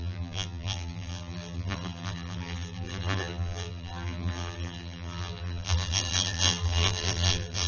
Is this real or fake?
fake